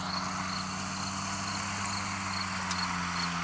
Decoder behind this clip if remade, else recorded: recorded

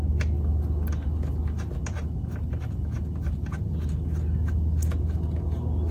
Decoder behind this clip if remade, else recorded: recorded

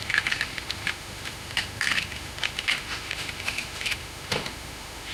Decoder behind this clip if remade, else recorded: remade, autoencoder, DAC-VAE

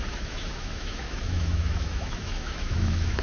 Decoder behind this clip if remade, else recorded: remade, autoencoder, DAC-VAE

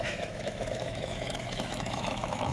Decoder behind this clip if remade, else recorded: remade, autoencoder, DAC-VAE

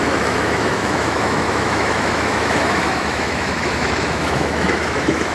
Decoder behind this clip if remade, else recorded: remade, autoencoder, DAC-VAE